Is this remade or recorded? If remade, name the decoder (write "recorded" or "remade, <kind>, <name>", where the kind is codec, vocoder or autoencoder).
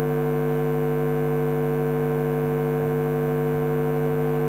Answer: recorded